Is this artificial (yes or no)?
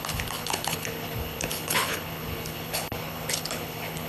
yes